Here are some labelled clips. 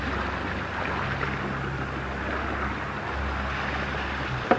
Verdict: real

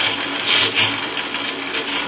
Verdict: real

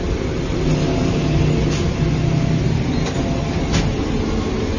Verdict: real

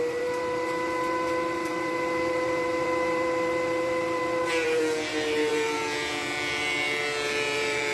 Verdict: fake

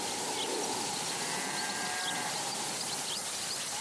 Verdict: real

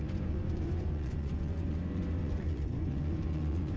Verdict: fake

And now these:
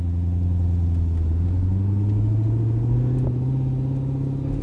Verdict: real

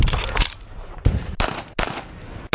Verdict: real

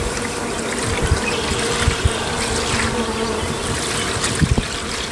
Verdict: real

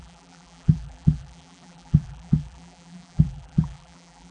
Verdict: fake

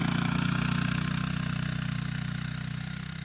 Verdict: real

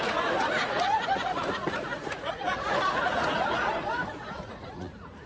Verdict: fake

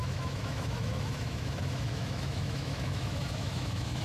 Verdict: fake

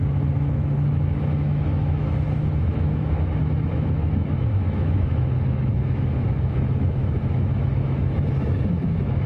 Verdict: fake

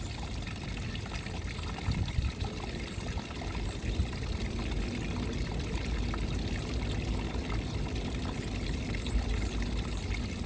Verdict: real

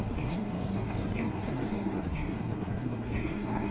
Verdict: fake